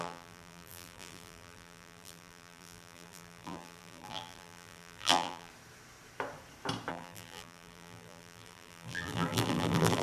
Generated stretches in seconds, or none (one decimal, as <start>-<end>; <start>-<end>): 0.0-5.5; 6.9-10.0